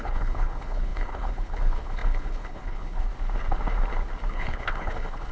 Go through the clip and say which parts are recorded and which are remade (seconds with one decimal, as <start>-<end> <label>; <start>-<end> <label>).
0.0-3.1 remade; 3.1-4.3 recorded; 4.3-5.3 remade

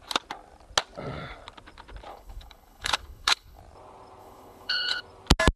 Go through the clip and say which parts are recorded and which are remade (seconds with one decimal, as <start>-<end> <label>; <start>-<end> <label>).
0.0-2.1 recorded; 2.1-3.6 remade; 3.6-4.2 recorded; 4.2-5.0 remade; 5.0-5.6 recorded

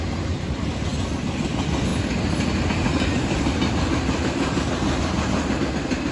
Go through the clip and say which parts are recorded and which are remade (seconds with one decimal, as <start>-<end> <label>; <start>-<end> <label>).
0.0-6.1 recorded

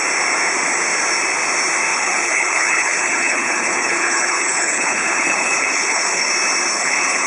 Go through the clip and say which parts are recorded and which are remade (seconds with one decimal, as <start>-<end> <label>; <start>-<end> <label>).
0.0-1.9 recorded; 1.9-6.3 remade; 6.3-6.7 recorded; 6.7-7.3 remade

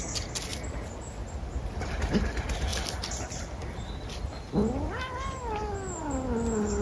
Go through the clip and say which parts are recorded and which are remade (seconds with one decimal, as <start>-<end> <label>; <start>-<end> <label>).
0.0-6.8 recorded